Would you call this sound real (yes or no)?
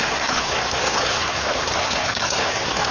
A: no